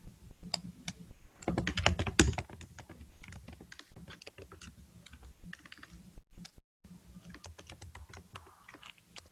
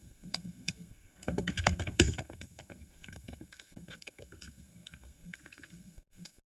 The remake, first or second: second